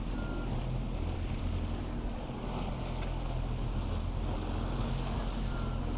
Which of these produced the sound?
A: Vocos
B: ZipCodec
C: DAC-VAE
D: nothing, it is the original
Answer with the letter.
D